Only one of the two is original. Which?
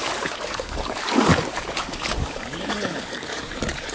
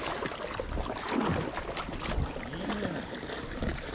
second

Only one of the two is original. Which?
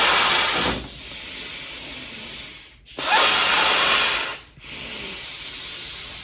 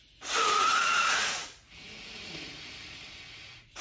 first